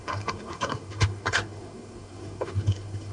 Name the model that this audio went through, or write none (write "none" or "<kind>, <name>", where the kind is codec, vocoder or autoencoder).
codec, SNAC